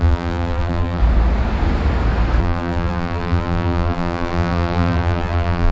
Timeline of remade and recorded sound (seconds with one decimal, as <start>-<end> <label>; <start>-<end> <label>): 0.0-1.0 remade; 1.0-2.4 recorded; 2.4-5.7 remade